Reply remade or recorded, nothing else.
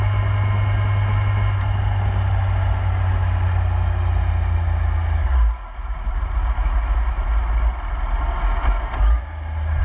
recorded